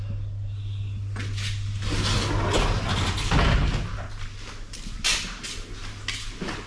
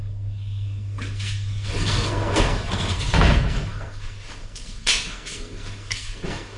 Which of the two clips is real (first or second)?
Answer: first